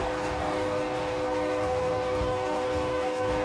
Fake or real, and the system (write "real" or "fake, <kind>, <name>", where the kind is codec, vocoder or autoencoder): fake, codec, DAC